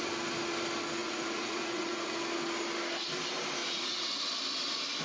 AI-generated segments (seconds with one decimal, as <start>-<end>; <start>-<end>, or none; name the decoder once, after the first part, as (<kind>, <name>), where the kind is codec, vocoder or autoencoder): 1.0-2.2 (vocoder, Vocos); 3.6-4.2